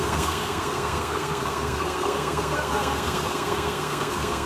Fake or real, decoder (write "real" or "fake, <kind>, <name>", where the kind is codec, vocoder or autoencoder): fake, codec, SNAC